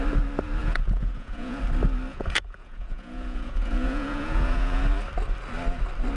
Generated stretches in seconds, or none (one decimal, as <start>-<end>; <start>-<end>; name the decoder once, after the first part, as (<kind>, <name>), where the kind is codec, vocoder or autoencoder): 0.6-1.6 (vocoder, Vocos); 2.1-4.8